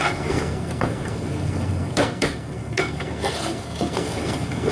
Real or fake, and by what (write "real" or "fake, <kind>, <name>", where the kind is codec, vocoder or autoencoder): fake, codec, SNAC